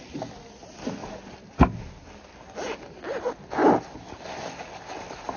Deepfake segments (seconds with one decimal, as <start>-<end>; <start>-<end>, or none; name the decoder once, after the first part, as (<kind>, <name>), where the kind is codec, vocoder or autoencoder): none

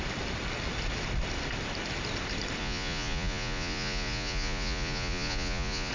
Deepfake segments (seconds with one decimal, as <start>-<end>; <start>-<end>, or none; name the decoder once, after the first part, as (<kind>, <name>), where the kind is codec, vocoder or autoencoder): 2.6-5.9 (vocoder, Vocos)

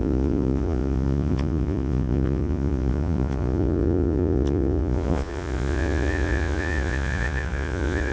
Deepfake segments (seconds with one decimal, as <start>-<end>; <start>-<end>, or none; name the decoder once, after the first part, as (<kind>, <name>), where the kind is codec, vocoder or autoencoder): 0.0-8.1 (vocoder, Vocos)

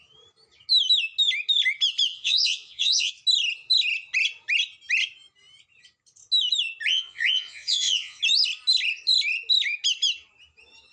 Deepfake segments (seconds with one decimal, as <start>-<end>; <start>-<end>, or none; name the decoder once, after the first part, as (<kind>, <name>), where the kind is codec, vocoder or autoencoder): 2.1-3.1 (vocoder, Vocos); 6.9-8.2

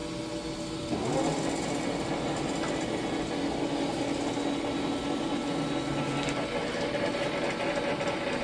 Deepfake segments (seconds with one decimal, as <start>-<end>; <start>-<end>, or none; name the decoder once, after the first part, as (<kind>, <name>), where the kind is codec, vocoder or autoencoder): none